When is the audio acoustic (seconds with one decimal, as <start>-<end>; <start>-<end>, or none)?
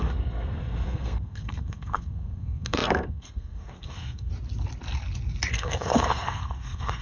4.3-5.5